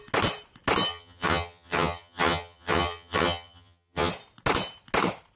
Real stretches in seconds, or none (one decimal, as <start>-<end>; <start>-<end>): 0.0-0.9; 4.1-5.4